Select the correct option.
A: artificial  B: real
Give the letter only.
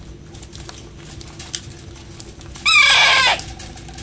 B